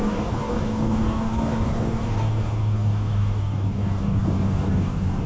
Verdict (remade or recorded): remade